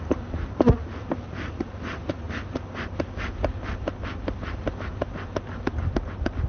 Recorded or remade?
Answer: recorded